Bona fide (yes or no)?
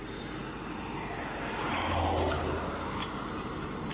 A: yes